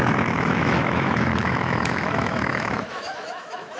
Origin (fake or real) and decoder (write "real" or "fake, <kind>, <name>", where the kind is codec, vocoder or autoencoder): fake, autoencoder, DAC-VAE